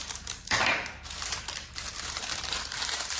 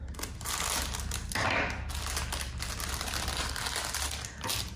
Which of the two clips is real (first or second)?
second